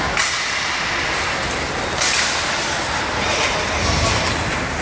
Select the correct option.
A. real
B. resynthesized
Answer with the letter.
A